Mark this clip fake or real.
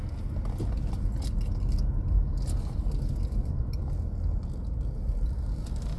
real